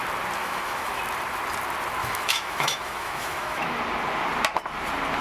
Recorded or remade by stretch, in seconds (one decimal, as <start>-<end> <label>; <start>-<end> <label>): 0.0-0.4 recorded; 0.4-1.0 remade; 1.0-2.0 recorded; 2.0-3.8 remade; 3.8-5.2 recorded